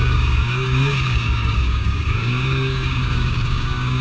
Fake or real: fake